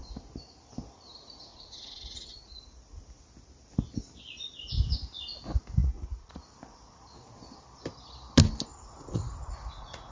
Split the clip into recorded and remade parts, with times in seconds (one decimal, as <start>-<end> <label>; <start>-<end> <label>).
0.0-1.5 recorded; 1.5-2.6 remade; 2.6-5.8 recorded; 5.8-6.4 remade; 6.4-8.7 recorded; 8.7-10.1 remade